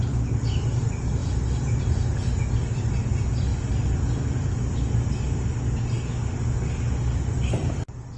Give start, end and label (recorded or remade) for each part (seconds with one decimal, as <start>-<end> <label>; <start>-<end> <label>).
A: 0.0-8.2 recorded